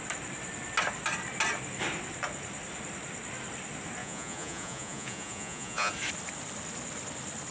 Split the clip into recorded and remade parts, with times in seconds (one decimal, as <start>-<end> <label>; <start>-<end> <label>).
0.0-4.0 recorded; 4.0-5.9 remade; 5.9-7.5 recorded